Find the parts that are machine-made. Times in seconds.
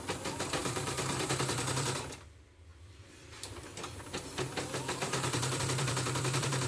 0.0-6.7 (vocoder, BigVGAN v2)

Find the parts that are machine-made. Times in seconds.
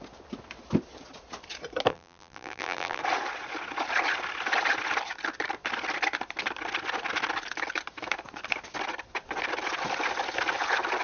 1.9-3.0 (vocoder, BigVGAN v2)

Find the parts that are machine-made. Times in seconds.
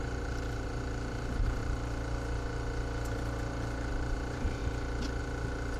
0.0-1.6 (vocoder, BigVGAN v2); 3.9-4.6; 5.2-5.8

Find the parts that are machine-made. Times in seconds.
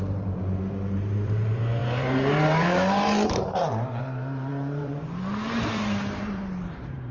0.0-7.1 (vocoder, BigVGAN v2)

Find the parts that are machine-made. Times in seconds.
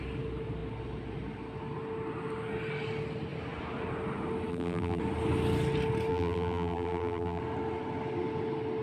4.5-5.0 (vocoder, BigVGAN v2); 6.1-7.4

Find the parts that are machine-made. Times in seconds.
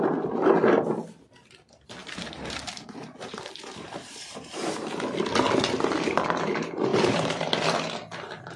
2.0-4.9 (vocoder, BigVGAN v2); 6.9-7.5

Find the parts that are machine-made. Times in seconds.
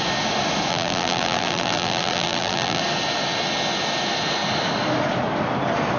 0.7-2.8 (vocoder, BigVGAN v2)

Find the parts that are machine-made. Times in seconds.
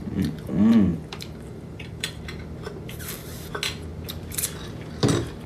0.9-2.2 (vocoder, BigVGAN v2)